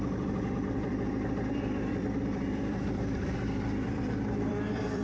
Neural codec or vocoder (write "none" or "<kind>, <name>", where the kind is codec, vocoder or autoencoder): vocoder, BigVGAN v2